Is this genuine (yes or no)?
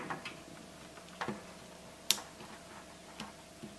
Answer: yes